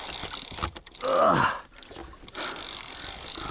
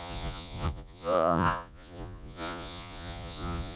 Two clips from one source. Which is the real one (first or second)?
first